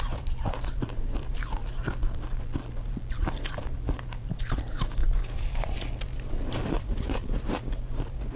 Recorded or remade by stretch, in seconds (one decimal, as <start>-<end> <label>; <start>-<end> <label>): 0.0-1.8 remade; 1.8-3.4 recorded; 3.4-5.0 remade; 5.0-6.3 recorded; 6.3-8.4 remade